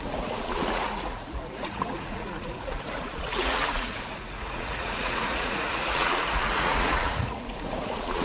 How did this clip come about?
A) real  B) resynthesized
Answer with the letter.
B